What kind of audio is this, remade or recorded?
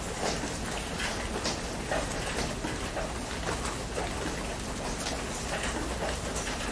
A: recorded